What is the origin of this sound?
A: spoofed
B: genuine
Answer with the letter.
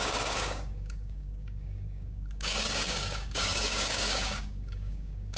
A